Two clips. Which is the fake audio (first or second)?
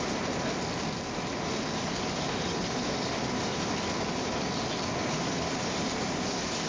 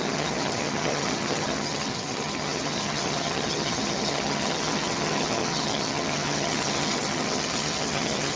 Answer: second